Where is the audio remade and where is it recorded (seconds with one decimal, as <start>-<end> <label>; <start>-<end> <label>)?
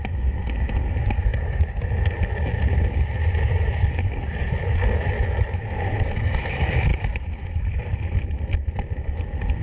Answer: 0.0-9.6 recorded